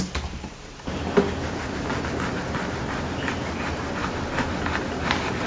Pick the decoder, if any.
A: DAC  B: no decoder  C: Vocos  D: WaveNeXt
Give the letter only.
B